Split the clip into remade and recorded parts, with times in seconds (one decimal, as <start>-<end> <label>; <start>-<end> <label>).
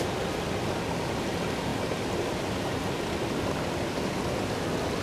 0.0-5.0 recorded